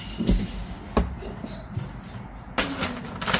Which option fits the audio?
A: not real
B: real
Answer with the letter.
B